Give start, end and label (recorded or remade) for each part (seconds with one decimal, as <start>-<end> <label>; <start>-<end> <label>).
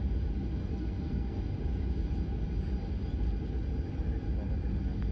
0.0-0.6 recorded; 0.6-1.4 remade; 1.4-5.1 recorded